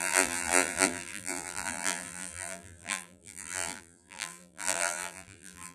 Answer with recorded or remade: remade